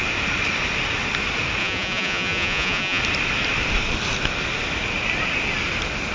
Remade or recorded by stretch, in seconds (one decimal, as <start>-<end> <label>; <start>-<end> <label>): 0.0-1.6 recorded; 1.6-3.0 remade; 3.0-6.1 recorded